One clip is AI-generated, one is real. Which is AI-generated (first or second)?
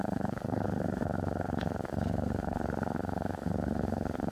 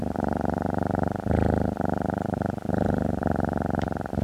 first